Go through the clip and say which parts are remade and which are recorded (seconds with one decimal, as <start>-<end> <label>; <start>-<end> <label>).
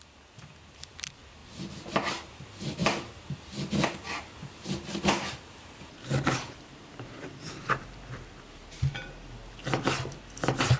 0.0-1.4 recorded; 1.4-2.4 remade; 2.4-2.8 recorded; 2.8-7.8 remade; 7.8-10.8 recorded